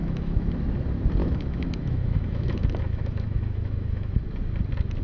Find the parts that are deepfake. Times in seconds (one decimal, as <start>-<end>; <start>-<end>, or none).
0.0-0.5; 1.2-4.2